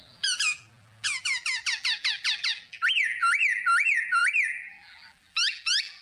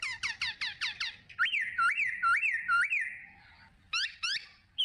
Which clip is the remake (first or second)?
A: first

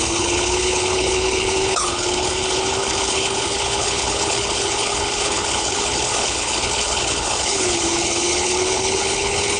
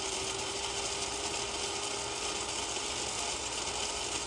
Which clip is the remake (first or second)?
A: first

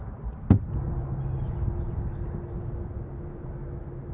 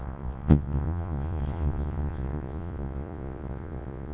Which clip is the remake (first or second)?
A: second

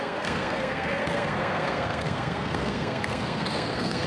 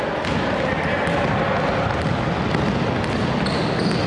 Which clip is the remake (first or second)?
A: first